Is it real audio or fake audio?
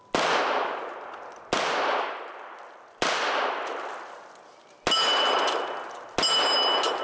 real